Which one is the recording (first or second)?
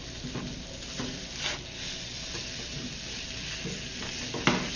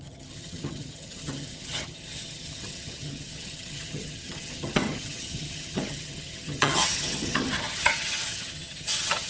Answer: first